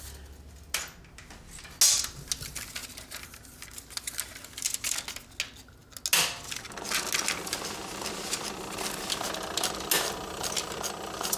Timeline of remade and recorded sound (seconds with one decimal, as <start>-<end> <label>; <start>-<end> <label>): 0.0-11.4 recorded